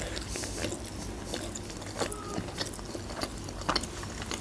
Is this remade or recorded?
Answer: recorded